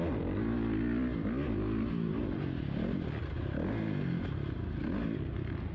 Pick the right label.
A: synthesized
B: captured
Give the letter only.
B